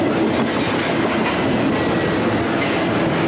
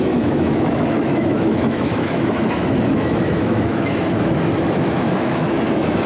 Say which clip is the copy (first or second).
second